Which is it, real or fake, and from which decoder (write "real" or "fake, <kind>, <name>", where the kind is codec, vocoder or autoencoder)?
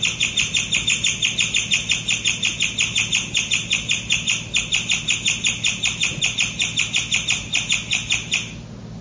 real